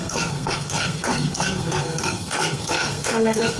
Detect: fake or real fake